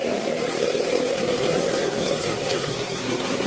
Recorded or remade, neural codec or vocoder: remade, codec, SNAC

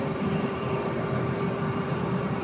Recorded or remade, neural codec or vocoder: remade, vocoder, BigVGAN v2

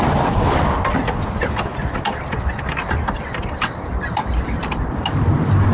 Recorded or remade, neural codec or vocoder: recorded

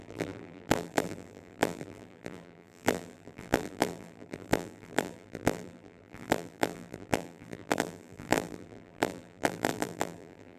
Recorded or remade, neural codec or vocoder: remade, vocoder, BigVGAN v2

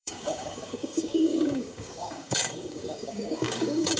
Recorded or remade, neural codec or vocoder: remade, codec, DAC